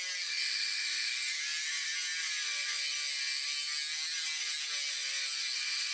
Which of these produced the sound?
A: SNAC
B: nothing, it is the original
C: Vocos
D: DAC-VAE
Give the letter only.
B